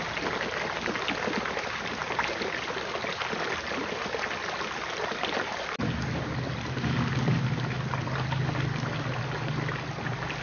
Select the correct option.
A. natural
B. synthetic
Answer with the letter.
A